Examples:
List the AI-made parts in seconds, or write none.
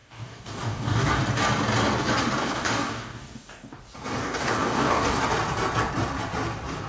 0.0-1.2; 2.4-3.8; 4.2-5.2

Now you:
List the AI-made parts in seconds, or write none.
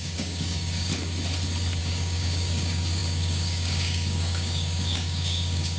0.0-0.9; 1.8-5.8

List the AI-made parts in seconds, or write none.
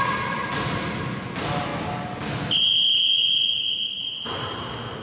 none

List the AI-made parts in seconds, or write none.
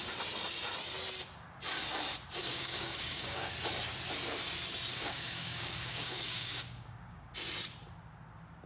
2.4-3.5; 4.9-7.3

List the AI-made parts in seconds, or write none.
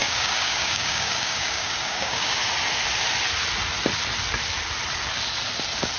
0.0-2.4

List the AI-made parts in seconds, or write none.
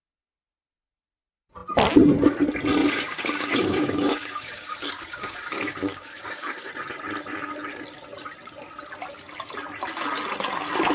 2.8-6.7